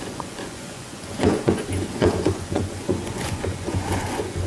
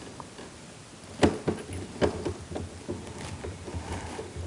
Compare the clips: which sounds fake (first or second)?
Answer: first